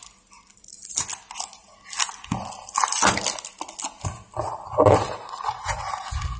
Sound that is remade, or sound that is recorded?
recorded